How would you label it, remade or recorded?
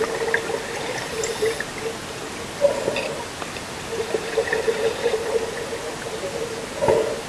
recorded